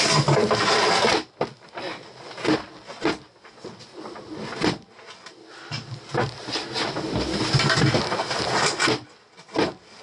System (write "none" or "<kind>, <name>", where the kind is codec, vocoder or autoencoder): none